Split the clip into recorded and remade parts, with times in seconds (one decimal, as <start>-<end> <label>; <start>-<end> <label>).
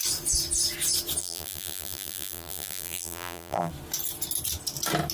0.0-1.2 recorded; 1.2-3.7 remade; 3.7-5.1 recorded